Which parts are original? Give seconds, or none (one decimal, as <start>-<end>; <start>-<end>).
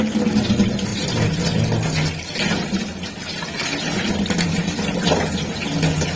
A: 0.0-6.2